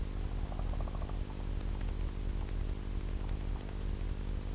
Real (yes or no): yes